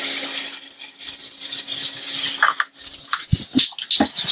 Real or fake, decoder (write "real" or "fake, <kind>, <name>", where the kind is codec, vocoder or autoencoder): real